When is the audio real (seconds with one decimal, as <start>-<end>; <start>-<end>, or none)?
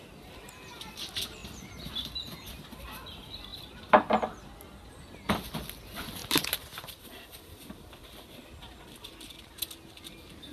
0.0-10.5